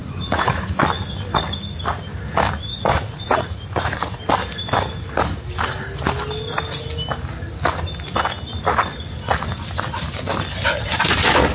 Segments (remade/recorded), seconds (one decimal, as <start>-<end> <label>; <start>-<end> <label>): 0.0-0.8 remade; 0.8-2.7 recorded; 2.7-4.2 remade; 4.2-11.5 recorded